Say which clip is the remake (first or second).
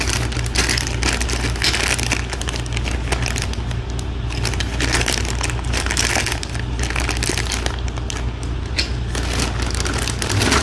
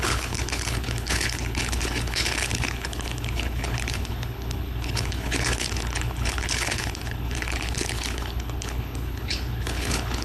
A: second